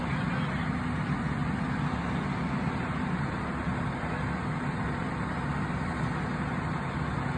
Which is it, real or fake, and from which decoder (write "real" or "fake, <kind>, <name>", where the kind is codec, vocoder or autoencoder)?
real